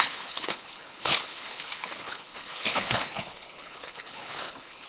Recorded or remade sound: remade